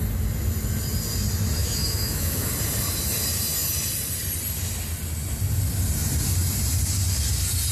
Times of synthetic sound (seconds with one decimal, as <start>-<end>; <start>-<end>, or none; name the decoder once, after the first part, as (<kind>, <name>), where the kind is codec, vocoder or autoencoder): 1.6-2.5 (autoencoder, DAC-VAE)